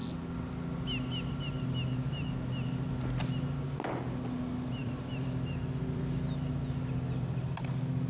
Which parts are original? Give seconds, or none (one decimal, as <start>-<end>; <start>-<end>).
0.0-4.8; 6.5-8.1